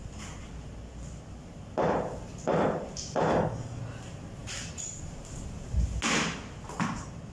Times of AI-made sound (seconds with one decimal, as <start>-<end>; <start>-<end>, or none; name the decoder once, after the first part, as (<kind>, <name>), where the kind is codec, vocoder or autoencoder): 3.3-3.8 (codec, DAC)